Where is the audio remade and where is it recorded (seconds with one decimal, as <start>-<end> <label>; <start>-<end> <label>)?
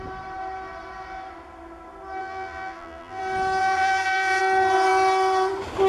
0.0-2.2 recorded; 2.2-3.2 remade; 3.2-3.6 recorded; 3.6-4.4 remade; 4.4-5.9 recorded